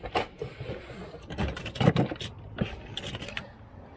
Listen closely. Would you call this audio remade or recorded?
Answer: recorded